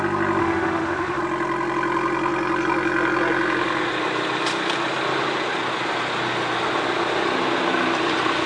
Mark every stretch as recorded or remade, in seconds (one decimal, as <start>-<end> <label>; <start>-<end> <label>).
0.0-0.4 recorded; 0.4-1.2 remade; 1.2-8.5 recorded